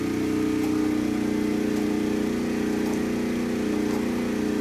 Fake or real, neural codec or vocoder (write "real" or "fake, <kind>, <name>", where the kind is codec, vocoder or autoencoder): real